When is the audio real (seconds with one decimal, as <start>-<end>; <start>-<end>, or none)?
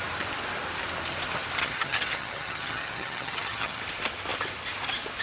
0.0-1.6; 3.8-5.2